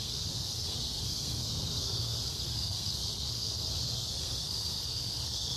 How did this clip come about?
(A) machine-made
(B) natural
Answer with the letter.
A